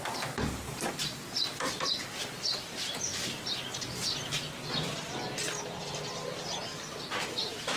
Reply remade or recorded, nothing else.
recorded